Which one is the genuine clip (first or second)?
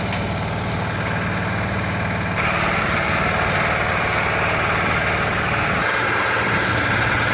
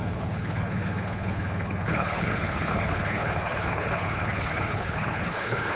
first